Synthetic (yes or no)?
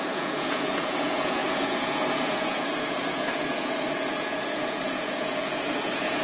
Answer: yes